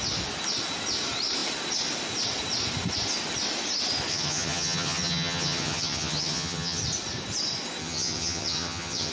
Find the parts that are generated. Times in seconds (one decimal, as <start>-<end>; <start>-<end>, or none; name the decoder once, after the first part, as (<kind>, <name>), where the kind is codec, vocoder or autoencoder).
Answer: 4.1-6.8 (vocoder, HiFi-GAN); 7.8-9.1